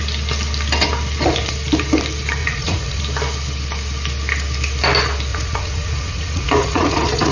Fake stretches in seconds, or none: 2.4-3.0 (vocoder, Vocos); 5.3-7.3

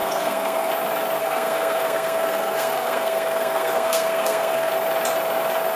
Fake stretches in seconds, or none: 0.0-0.7 (codec, SNAC); 1.2-4.7

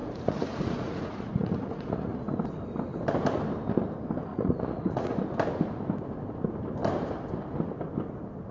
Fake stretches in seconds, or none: 0.0-2.3 (vocoder, Vocos); 4.3-5.2

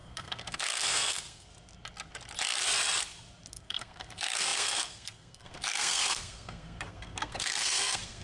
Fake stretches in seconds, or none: 0.0-1.5 (codec, SNAC); 3.5-8.2

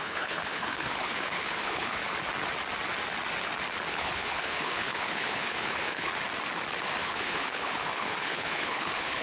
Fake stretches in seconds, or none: 0.0-2.0 (codec, HILCodec); 3.9-6.1; 6.9-9.2

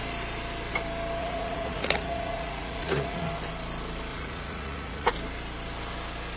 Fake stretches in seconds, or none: 1.2-3.3 (vocoder, Vocos); 4.1-5.1

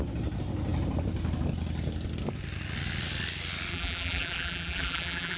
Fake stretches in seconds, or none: 3.7-5.4 (vocoder, BigVGAN v2)